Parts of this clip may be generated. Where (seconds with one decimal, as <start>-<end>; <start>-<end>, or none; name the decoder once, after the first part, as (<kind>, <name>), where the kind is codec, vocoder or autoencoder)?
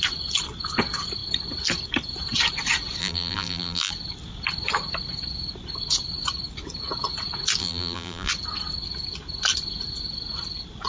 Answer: 3.0-3.9 (vocoder, BigVGAN v2); 7.6-8.3